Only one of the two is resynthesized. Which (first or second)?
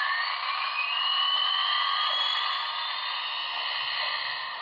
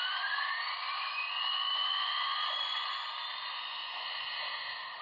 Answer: second